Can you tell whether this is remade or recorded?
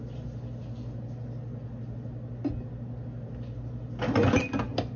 recorded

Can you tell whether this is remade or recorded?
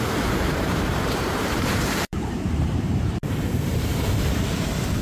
remade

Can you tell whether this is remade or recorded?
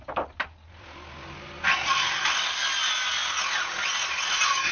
recorded